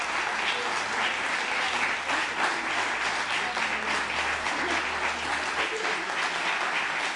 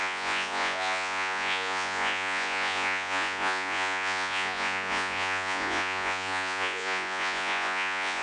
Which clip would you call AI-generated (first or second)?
second